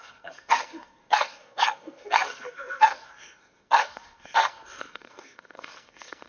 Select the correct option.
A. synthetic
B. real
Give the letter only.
A